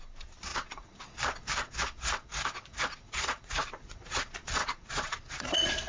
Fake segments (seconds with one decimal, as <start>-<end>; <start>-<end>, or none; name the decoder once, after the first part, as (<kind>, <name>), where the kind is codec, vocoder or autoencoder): 0.5-1.0 (vocoder, Vocos); 3.0-5.9